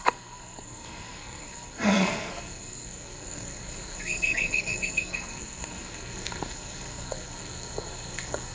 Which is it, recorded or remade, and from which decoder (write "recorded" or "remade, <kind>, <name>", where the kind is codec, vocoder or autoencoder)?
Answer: remade, codec, SNAC